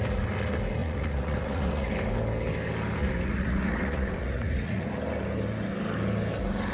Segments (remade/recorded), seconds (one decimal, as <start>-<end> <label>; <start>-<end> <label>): 0.0-0.8 recorded; 0.8-1.9 remade; 1.9-3.0 recorded; 3.0-4.9 remade; 4.9-6.7 recorded